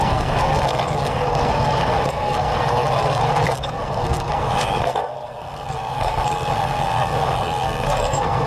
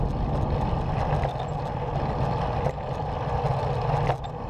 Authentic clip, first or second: second